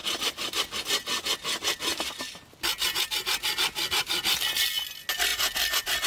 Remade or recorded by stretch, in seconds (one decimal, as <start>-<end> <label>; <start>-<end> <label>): 0.0-6.1 recorded